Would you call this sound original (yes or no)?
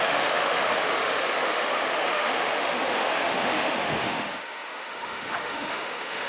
no